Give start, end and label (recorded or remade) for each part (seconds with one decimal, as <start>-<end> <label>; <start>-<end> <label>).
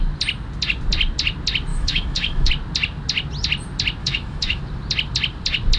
0.0-1.7 recorded; 1.7-2.5 remade; 2.5-4.0 recorded; 4.0-4.6 remade; 4.6-5.8 recorded